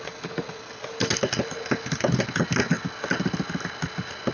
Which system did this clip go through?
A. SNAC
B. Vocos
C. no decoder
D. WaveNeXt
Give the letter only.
C